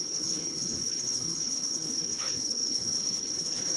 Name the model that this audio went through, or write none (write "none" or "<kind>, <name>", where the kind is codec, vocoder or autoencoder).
codec, HILCodec